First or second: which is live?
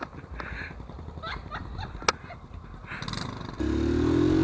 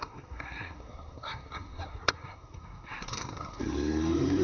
first